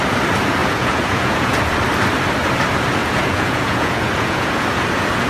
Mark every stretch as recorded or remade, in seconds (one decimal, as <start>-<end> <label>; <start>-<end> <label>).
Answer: 0.0-0.6 recorded; 0.6-1.6 remade; 1.6-3.0 recorded; 3.0-5.3 remade